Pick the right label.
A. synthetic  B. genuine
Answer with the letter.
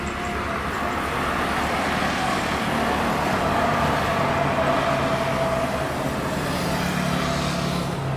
B